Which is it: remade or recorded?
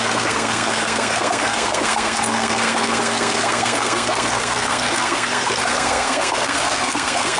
remade